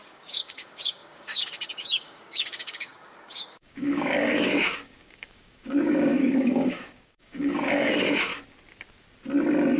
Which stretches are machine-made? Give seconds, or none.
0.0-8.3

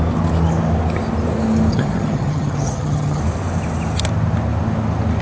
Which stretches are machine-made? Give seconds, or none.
1.7-3.2

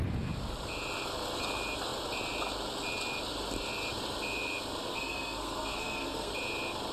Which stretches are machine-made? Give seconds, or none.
4.9-6.3

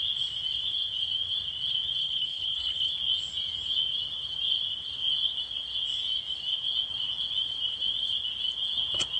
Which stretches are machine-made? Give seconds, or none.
2.0-2.9

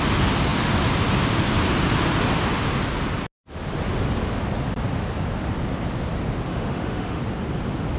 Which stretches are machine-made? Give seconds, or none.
6.5-7.2

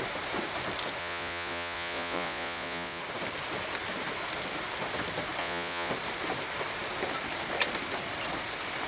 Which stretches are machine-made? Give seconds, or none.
1.0-3.0; 5.4-5.9

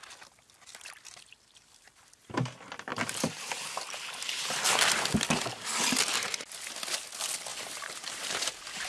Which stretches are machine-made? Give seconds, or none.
7.5-8.9

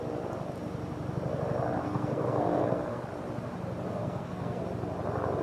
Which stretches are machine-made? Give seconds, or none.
1.8-3.0; 3.9-4.6